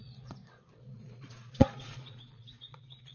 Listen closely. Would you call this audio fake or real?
fake